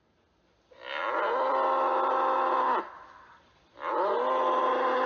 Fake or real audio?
real